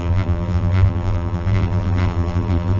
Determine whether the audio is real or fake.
fake